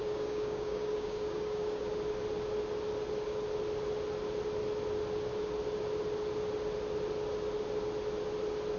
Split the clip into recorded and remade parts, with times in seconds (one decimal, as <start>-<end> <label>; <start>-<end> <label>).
0.0-1.8 remade; 1.8-8.8 recorded